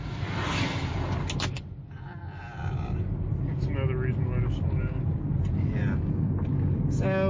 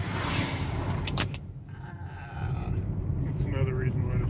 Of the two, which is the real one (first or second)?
first